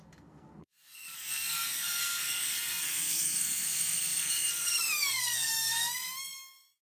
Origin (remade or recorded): remade